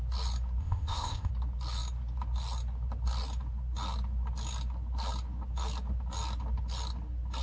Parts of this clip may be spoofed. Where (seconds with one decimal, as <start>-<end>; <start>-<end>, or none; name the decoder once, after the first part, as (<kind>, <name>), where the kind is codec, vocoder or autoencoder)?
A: 0.6-1.3 (codec, ZipCodec)